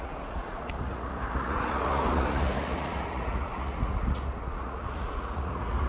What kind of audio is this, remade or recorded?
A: remade